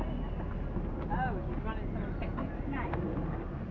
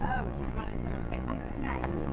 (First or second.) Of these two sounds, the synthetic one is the second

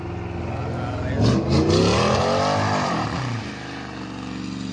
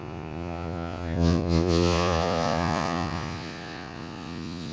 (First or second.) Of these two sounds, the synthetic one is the second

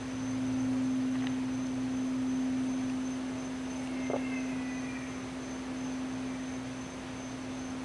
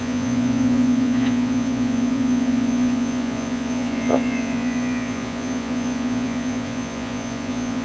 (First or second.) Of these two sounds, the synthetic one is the second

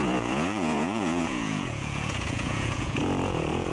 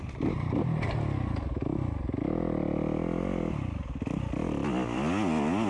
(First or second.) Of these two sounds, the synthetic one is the first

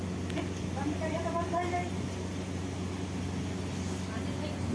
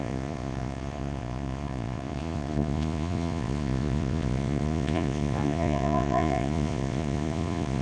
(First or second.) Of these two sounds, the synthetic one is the second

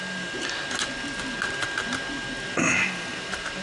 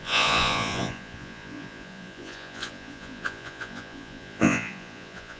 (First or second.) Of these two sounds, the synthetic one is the second